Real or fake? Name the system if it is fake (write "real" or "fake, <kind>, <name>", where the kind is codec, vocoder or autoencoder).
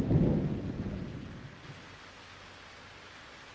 real